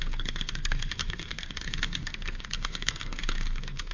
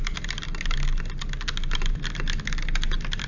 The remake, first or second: first